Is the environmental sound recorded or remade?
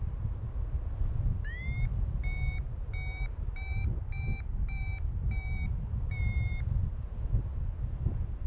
recorded